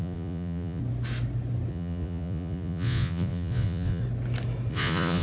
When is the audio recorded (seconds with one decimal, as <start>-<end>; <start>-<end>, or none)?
0.8-1.7; 4.0-4.7